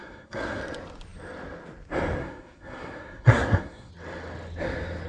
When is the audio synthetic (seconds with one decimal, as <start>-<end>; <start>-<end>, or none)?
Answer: 0.0-0.6; 2.2-3.9